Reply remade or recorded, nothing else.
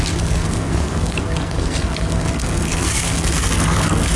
remade